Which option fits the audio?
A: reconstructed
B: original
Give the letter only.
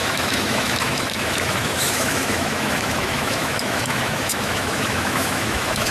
A